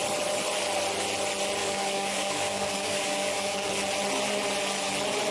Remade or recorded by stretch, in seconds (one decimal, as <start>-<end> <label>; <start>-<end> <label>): 0.0-1.6 recorded; 1.6-3.7 remade; 3.7-5.3 recorded